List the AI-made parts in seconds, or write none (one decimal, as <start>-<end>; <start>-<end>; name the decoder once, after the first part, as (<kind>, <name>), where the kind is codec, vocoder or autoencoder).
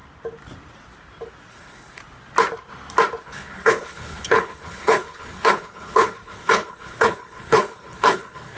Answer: 1.5-2.0 (codec, HILCodec); 3.2-8.6